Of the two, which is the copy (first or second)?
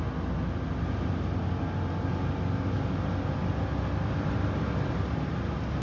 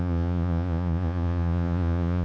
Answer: second